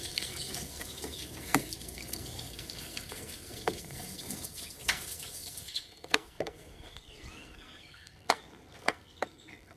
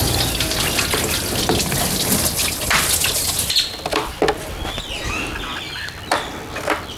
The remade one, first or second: first